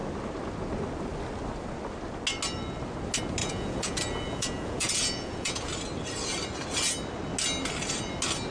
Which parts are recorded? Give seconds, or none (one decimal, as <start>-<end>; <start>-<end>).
0.0-3.4; 5.7-8.5